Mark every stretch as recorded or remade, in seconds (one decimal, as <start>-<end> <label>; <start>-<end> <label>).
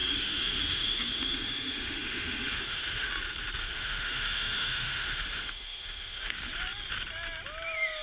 0.0-3.1 remade; 3.1-3.6 recorded; 3.6-6.3 remade; 6.3-8.0 recorded